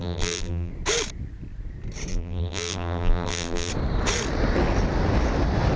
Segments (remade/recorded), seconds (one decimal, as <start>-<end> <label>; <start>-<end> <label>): 0.0-0.7 remade; 0.7-2.1 recorded; 2.1-3.7 remade; 3.7-5.8 recorded